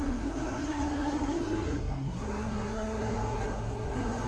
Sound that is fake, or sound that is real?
fake